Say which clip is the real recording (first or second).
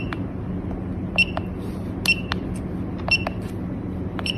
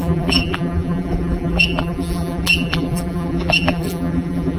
first